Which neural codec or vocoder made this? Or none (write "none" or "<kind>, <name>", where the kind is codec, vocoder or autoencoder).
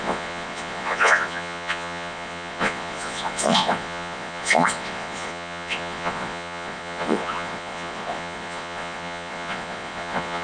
vocoder, Vocos